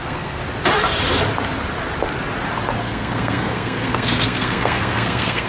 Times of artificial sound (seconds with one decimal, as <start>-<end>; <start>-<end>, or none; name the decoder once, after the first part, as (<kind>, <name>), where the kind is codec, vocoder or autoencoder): 0.0-0.4 (codec, SNAC); 2.8-5.5